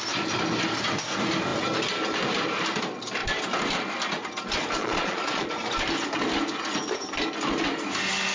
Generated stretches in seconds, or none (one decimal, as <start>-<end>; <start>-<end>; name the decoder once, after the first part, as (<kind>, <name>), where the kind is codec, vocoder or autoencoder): 4.8-5.5 (vocoder, Vocos)